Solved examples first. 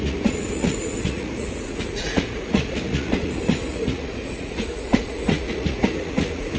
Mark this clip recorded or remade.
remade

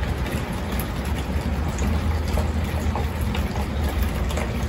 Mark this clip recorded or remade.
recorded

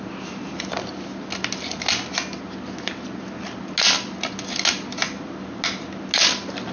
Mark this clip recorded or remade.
recorded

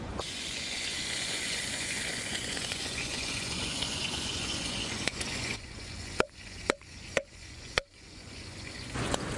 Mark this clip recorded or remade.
remade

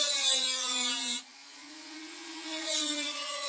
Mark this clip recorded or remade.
remade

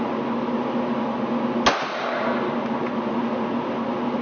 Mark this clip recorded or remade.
recorded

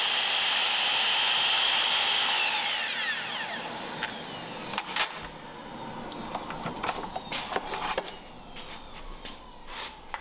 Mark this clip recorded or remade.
recorded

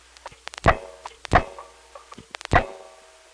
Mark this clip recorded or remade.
recorded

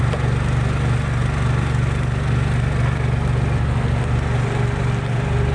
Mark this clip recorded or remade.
recorded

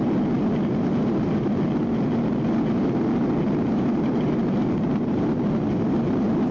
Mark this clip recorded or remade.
recorded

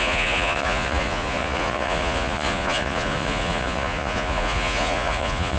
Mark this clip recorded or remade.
remade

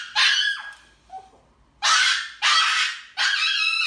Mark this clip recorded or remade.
recorded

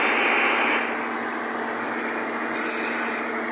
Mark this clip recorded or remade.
recorded